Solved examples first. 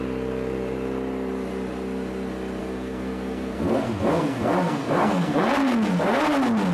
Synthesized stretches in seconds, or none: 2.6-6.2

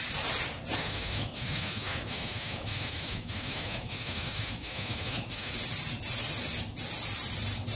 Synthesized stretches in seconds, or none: 0.8-5.5